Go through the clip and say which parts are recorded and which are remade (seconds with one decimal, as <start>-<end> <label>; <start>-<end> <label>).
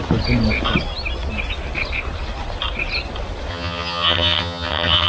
0.0-3.5 recorded; 3.5-5.1 remade